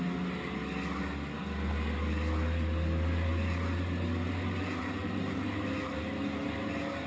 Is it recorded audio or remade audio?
recorded